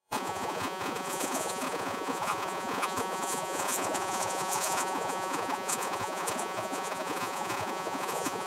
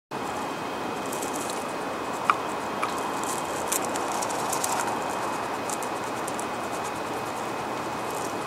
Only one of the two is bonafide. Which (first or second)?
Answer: second